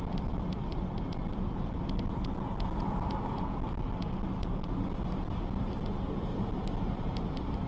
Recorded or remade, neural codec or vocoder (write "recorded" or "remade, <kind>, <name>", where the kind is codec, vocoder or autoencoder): recorded